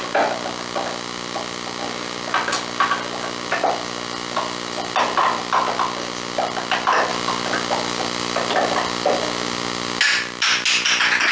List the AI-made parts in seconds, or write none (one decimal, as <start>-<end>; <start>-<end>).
none